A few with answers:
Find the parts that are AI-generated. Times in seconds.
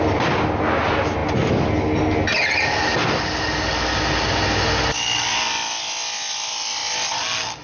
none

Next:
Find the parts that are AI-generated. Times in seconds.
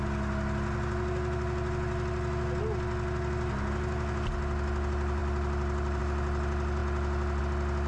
5.2-6.0 (vocoder, BigVGAN v2)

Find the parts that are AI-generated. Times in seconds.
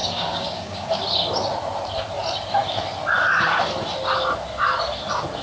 0.0-0.9 (codec, DAC)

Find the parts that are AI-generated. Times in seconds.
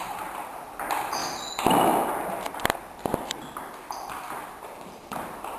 0.0-1.2 (vocoder, BigVGAN v2); 4.6-5.6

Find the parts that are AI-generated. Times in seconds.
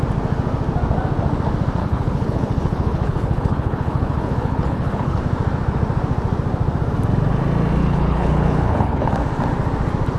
1.8-5.2 (codec, HILCodec); 7.8-9.1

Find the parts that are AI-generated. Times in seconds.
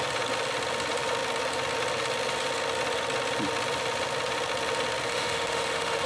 5.1-6.1 (autoencoder, DAC-VAE)